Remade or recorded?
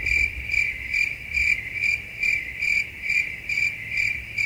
remade